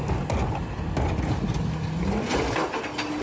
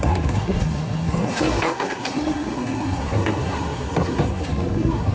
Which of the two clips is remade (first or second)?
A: second